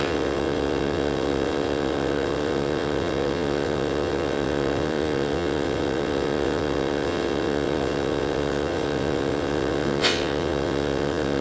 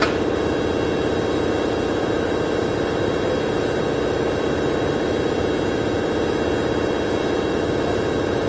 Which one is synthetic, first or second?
first